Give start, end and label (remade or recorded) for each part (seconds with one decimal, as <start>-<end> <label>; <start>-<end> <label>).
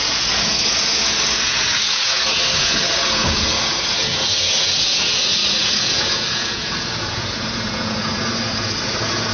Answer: 0.0-9.3 remade